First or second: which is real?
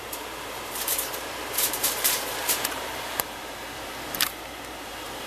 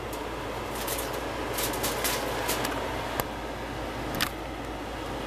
second